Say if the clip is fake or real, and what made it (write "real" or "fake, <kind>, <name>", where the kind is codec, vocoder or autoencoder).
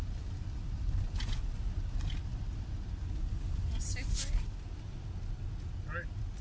real